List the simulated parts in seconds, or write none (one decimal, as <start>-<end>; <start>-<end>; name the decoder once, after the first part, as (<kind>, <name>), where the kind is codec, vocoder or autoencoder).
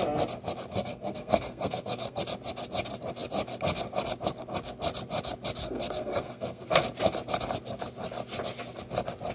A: 0.7-2.2 (codec, SNAC); 5.6-6.8